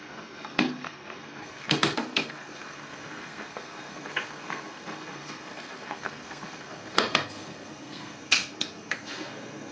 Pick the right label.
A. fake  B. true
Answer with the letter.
A